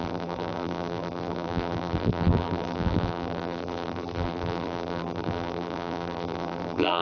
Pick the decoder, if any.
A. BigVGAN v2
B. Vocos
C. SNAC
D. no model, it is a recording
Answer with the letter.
A